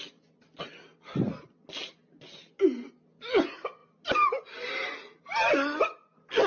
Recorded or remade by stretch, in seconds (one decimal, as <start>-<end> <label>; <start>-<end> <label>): 0.0-6.5 recorded